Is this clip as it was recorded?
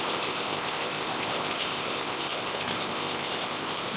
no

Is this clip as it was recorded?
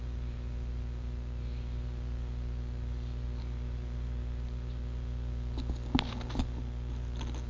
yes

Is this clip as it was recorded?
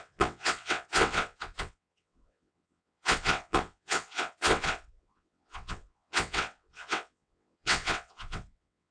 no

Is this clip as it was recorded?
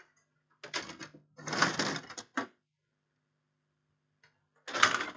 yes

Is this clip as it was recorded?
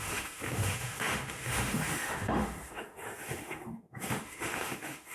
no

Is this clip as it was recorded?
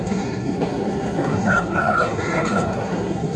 no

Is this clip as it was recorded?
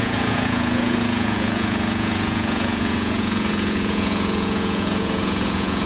no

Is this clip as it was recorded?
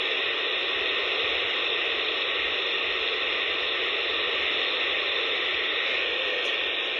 yes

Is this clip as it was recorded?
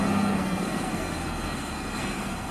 no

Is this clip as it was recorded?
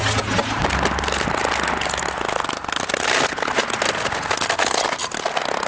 yes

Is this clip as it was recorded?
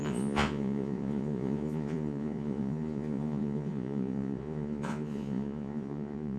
no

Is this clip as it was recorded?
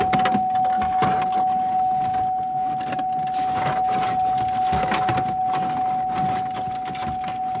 yes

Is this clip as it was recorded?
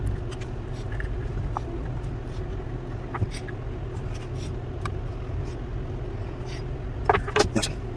yes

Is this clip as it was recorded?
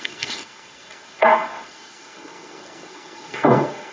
no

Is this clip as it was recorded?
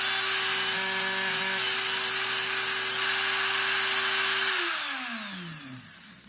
yes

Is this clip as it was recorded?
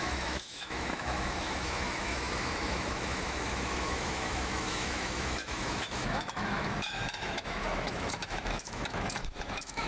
no